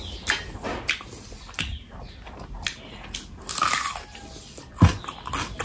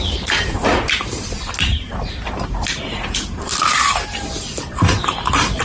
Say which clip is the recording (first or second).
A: first